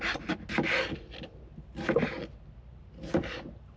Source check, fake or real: real